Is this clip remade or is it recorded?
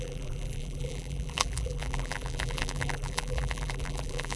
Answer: remade